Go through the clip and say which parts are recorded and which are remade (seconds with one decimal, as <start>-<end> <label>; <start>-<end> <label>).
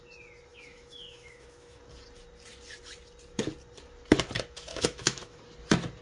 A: 0.0-0.5 recorded; 0.5-1.8 remade; 1.8-4.7 recorded; 4.7-5.4 remade; 5.4-6.0 recorded